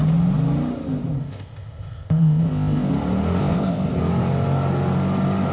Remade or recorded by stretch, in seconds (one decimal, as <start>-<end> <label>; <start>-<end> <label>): 0.0-1.2 recorded; 1.2-2.9 remade; 2.9-3.4 recorded; 3.4-4.0 remade; 4.0-5.5 recorded